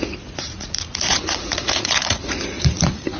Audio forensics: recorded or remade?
remade